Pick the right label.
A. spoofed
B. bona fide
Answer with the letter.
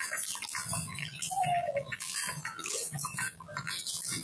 A